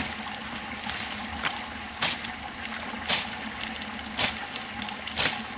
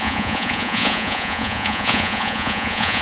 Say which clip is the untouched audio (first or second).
first